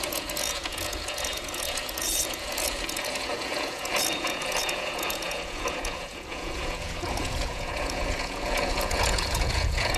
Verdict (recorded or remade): remade